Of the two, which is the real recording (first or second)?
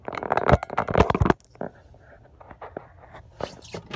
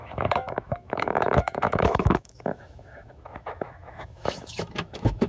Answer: first